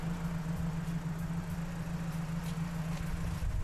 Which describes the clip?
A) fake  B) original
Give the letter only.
B